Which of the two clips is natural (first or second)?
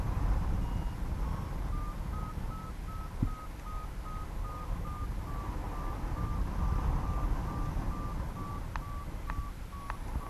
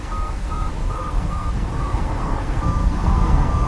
first